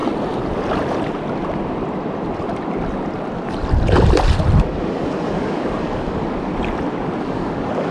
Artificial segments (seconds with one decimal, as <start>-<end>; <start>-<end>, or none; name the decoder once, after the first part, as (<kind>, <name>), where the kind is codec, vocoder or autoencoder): 4.6-6.5 (codec, DAC); 7.2-7.9